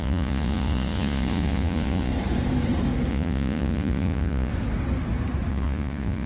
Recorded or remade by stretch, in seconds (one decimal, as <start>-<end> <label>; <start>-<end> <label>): 0.0-2.1 remade; 2.1-3.1 recorded; 3.1-4.5 remade; 4.5-5.5 recorded; 5.5-6.3 remade